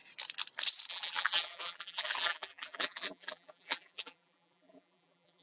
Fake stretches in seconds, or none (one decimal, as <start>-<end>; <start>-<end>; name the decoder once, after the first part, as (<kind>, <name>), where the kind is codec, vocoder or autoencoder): 0.9-5.4 (vocoder, BigVGAN v2)

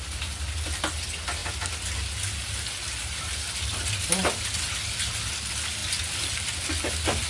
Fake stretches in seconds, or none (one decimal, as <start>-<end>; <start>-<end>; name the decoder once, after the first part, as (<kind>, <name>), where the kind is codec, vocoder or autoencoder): none

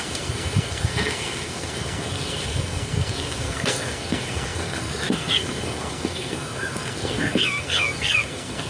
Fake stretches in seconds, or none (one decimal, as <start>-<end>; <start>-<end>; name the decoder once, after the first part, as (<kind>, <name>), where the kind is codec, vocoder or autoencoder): 0.0-8.7 (codec, SNAC)

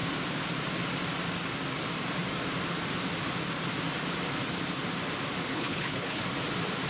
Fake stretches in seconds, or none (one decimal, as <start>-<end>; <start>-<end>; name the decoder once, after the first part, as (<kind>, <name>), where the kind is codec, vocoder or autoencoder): 5.5-6.2 (codec, HILCodec)

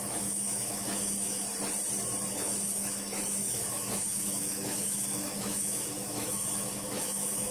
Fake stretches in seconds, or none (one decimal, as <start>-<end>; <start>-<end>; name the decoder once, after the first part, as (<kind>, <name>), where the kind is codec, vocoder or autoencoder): 0.0-1.5 (autoencoder, DAC-VAE); 2.3-7.5

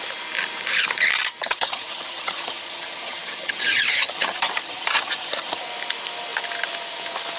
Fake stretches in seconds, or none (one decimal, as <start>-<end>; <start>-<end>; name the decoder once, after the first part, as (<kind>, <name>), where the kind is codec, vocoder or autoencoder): 1.4-5.6 (vocoder, HiFi-GAN)